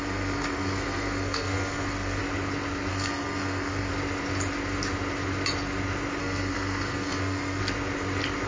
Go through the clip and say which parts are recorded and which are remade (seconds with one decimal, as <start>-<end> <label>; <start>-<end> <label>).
0.0-2.2 remade; 2.2-2.9 recorded; 2.9-3.9 remade; 3.9-6.2 recorded; 6.2-7.6 remade; 7.6-8.5 recorded